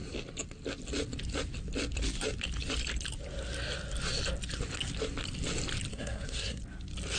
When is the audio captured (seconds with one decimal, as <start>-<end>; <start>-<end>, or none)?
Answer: 0.0-5.9; 6.6-7.2